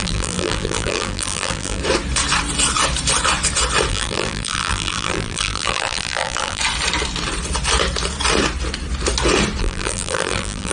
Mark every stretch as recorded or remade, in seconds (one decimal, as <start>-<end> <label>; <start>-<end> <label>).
0.0-1.8 remade; 1.8-3.9 recorded; 3.9-6.6 remade; 6.6-9.6 recorded; 9.6-10.7 remade